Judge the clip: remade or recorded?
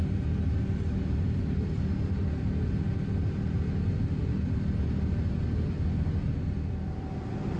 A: recorded